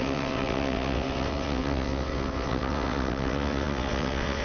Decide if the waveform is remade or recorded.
remade